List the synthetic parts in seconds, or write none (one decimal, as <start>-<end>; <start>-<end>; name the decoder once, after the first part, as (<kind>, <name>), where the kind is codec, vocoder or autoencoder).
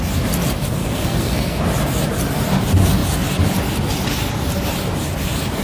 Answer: 0.8-1.6 (codec, SNAC)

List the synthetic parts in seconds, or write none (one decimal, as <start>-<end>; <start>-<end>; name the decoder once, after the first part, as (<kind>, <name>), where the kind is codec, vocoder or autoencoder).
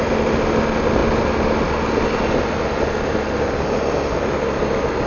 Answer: none